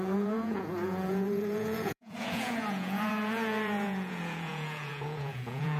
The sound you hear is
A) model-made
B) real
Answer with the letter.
A